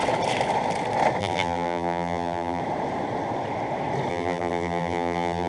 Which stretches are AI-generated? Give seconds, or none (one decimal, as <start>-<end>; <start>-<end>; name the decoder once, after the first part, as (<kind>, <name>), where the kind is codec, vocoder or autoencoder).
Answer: 1.2-2.6 (vocoder, BigVGAN v2); 4.1-5.5